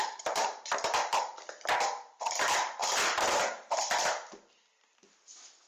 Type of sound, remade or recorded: recorded